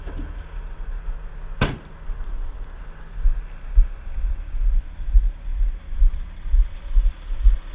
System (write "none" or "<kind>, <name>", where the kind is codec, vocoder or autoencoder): none